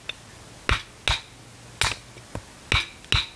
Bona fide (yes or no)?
yes